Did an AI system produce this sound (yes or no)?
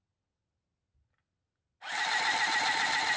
no